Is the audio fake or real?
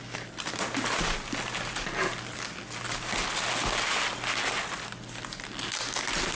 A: real